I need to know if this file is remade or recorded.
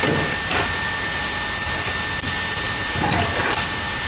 remade